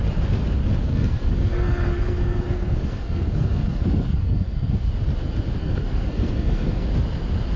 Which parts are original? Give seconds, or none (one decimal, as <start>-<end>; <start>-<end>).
0.0-0.9; 4.9-5.6; 6.9-7.6